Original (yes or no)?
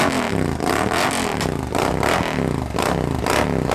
yes